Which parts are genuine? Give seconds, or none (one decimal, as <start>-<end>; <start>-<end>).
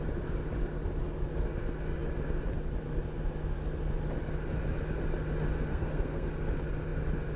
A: 0.0-5.7; 6.3-7.4